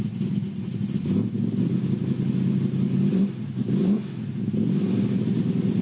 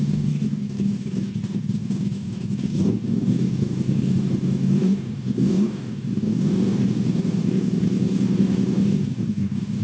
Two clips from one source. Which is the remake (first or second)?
second